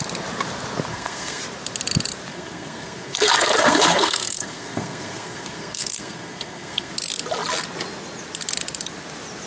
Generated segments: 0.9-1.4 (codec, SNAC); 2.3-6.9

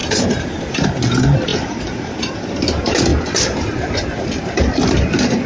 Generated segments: 0.0-0.7 (vocoder, BigVGAN v2); 1.5-2.5; 3.1-4.6